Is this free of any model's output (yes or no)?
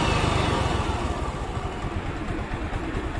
yes